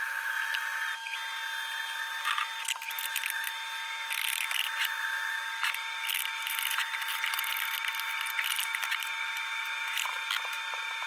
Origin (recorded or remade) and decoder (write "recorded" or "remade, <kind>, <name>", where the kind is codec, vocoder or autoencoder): recorded